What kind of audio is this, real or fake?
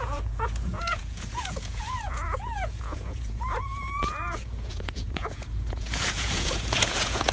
fake